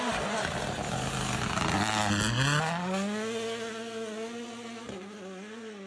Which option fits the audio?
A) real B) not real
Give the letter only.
A